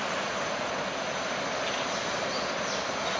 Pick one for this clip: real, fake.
real